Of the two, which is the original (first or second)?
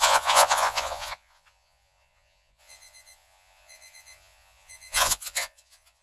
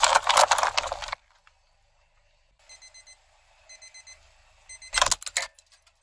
second